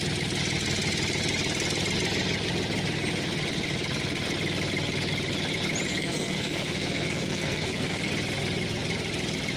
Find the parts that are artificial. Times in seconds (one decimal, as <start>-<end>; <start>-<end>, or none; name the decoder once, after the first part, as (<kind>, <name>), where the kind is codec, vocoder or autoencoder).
5.9-8.1 (codec, SNAC)